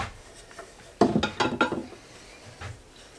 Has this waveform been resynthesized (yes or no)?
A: no